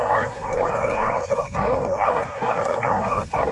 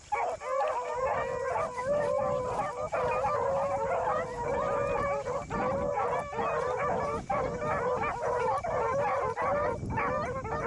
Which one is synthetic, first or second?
first